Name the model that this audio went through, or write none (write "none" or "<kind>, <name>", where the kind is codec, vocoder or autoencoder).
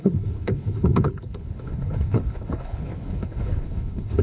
codec, HILCodec